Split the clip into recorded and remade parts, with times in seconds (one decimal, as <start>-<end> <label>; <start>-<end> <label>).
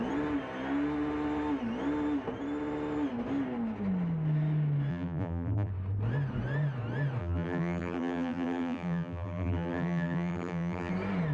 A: 0.0-4.9 recorded; 4.9-5.7 remade; 5.7-7.2 recorded; 7.2-10.9 remade; 10.9-11.3 recorded